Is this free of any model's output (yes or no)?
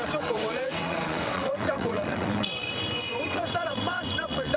no